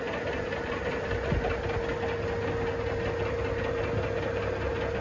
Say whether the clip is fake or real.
real